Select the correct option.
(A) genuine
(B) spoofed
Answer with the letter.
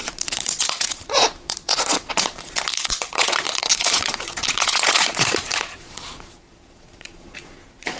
B